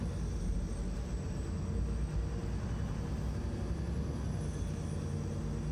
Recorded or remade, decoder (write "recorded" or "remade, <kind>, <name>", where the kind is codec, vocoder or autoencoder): recorded